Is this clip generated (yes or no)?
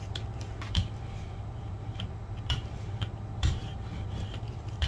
yes